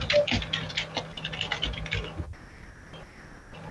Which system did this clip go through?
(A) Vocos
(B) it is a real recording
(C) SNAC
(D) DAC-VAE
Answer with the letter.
B